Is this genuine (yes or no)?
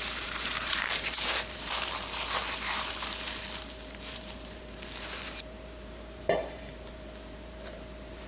no